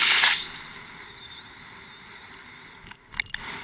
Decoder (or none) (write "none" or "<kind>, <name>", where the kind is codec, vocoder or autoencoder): none